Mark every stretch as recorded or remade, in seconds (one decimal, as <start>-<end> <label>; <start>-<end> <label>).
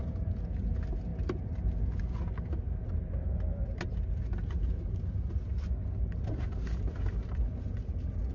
0.0-8.3 recorded